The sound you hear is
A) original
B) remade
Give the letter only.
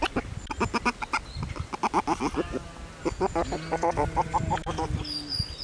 A